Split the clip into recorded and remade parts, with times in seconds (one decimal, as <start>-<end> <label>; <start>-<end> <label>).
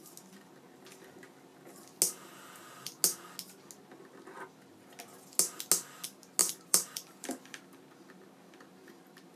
0.0-6.4 recorded; 6.4-7.8 remade; 7.8-9.4 recorded